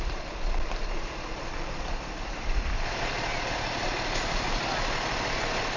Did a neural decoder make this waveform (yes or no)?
yes